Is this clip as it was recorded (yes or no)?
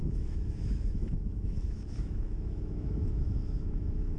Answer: no